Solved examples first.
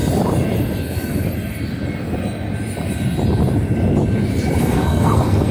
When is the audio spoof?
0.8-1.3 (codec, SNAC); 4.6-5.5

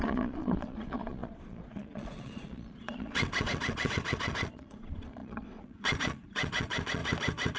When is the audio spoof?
0.0-7.0 (vocoder, Vocos)

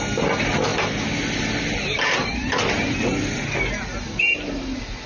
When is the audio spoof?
none

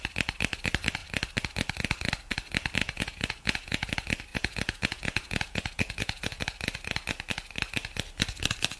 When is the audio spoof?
2.8-3.9 (vocoder, Vocos); 4.3-6.4

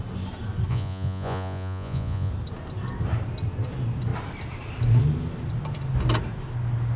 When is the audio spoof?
0.7-2.3 (vocoder, Vocos)

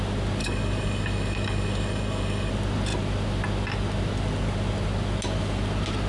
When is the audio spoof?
0.4-2.5 (codec, DAC)

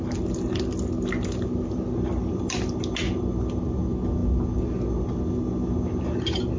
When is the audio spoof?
none

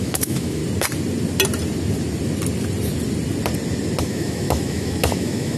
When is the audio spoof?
0.0-0.6 (autoencoder, DAC-VAE); 4.0-5.6